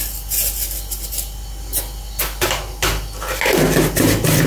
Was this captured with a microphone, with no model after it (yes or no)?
yes